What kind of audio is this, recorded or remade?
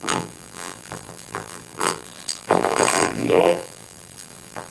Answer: remade